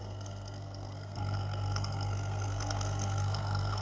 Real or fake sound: fake